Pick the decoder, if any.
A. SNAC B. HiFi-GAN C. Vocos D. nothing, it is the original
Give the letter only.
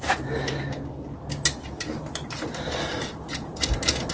D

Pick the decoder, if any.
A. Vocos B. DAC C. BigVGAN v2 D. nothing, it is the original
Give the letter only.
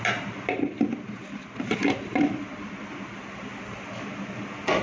D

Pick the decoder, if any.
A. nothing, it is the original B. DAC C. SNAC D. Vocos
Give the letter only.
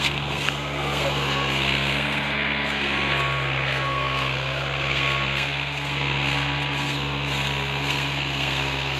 C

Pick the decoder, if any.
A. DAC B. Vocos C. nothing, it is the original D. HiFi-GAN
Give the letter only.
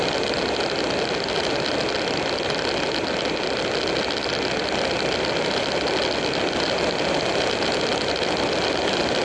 C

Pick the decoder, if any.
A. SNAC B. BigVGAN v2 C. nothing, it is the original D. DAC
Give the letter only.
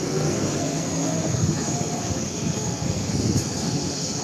A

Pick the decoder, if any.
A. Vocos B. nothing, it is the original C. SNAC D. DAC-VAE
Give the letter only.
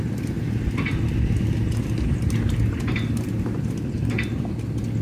B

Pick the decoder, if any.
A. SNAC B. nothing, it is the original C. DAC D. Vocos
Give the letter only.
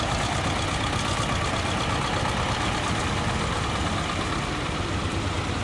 B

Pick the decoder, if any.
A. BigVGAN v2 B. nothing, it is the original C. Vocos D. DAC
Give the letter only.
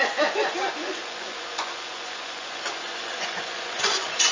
C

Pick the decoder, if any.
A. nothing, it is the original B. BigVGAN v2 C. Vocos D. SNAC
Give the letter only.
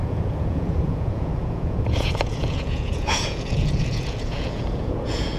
C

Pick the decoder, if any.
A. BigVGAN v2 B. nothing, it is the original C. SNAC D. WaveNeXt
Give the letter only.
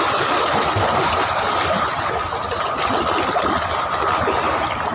B